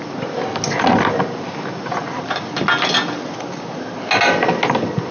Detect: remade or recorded recorded